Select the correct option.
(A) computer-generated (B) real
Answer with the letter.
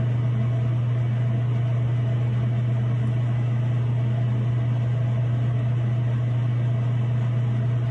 B